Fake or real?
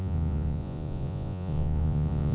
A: fake